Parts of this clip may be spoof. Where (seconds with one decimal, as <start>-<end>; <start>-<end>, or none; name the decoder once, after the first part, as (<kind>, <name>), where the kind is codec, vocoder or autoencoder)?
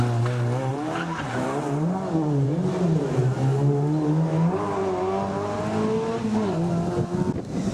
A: 0.7-3.2 (vocoder, BigVGAN v2)